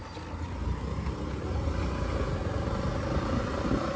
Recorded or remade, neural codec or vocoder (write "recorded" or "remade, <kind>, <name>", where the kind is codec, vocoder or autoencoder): recorded